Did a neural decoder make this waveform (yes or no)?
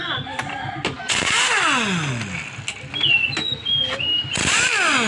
no